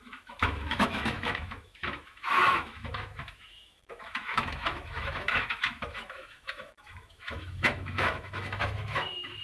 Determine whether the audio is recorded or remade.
remade